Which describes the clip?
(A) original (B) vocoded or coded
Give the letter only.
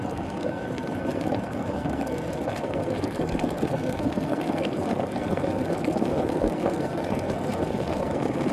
B